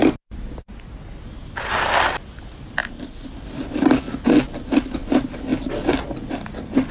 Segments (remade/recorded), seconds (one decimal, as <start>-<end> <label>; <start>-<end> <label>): 0.0-6.9 recorded